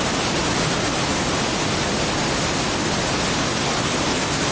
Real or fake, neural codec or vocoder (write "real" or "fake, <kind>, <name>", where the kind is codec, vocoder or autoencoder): real